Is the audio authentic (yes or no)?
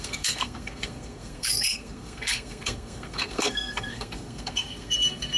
no